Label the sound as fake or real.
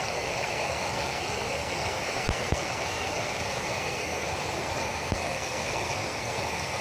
fake